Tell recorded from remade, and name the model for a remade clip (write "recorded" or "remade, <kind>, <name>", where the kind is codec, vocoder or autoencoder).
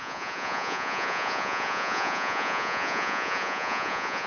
remade, vocoder, Vocos